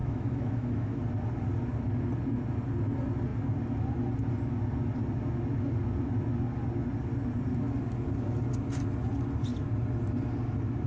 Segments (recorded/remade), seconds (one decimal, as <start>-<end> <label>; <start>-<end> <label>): 0.0-1.0 remade; 1.0-10.9 recorded